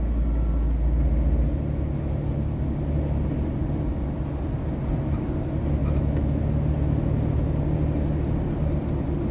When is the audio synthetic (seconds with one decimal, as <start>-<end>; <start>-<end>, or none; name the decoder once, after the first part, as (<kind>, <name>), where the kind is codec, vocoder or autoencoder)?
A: 5.8-6.4 (autoencoder, DAC-VAE)